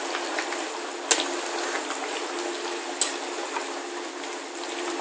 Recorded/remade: recorded